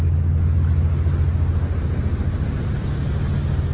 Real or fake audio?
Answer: real